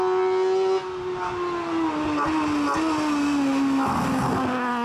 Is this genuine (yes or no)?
yes